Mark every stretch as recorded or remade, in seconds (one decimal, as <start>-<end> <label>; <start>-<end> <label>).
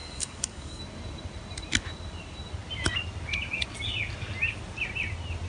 0.0-0.8 remade; 0.8-5.5 recorded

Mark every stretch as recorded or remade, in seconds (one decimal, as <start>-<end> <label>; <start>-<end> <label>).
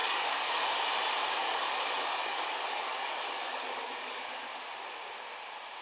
0.0-0.6 remade; 0.6-1.4 recorded; 1.4-4.2 remade; 4.2-5.8 recorded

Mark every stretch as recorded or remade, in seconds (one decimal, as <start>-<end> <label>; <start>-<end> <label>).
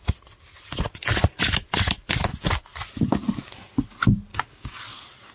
0.0-4.3 recorded; 4.3-4.8 remade; 4.8-5.3 recorded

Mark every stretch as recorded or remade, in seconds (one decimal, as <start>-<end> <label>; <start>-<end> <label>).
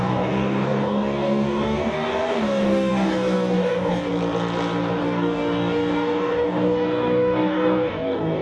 0.0-4.1 remade; 4.1-5.0 recorded; 5.0-8.4 remade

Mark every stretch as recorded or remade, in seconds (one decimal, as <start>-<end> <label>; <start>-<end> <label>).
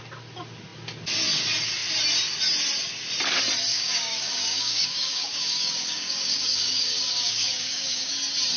0.0-3.7 recorded; 3.7-8.1 remade; 8.1-8.6 recorded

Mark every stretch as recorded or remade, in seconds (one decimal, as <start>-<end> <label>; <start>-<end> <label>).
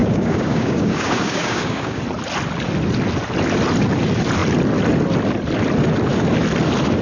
0.0-2.0 remade; 2.0-7.0 recorded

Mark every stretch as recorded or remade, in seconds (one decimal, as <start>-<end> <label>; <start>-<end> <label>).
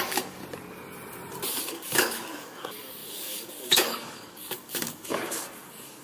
0.0-0.4 remade; 0.4-1.5 recorded; 1.5-6.0 remade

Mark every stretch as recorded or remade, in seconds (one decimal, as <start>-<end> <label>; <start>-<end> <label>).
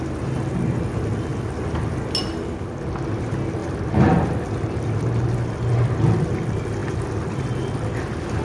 0.0-8.4 recorded